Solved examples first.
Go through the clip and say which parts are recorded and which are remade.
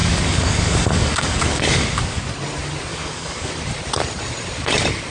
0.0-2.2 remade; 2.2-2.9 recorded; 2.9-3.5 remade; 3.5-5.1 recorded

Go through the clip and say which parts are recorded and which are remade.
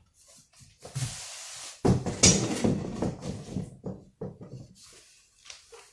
0.0-5.9 recorded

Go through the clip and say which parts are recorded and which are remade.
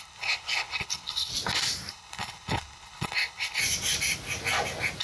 0.0-1.3 remade; 1.3-1.9 recorded; 1.9-3.6 remade; 3.6-5.0 recorded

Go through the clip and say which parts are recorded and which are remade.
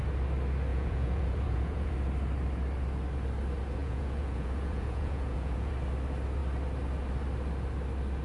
0.0-0.7 recorded; 0.7-1.9 remade; 1.9-3.8 recorded; 3.8-5.7 remade; 5.7-8.2 recorded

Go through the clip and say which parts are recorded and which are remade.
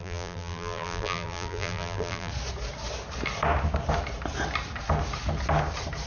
0.0-2.3 remade; 2.3-6.1 recorded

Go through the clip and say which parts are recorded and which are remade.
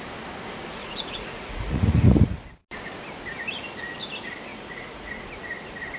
0.0-0.8 recorded; 0.8-2.3 remade; 2.3-4.5 recorded; 4.5-5.1 remade; 5.1-6.0 recorded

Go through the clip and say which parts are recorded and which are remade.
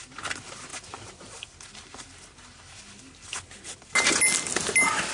0.0-5.1 recorded